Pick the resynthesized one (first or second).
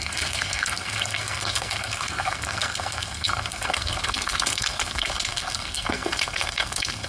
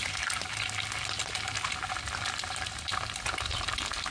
first